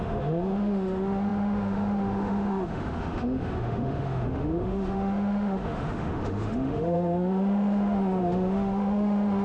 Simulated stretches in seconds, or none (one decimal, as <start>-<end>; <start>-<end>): 0.0-9.4